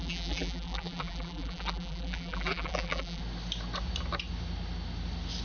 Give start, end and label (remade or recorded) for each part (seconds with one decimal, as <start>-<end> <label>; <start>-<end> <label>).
0.0-3.2 remade; 3.2-5.4 recorded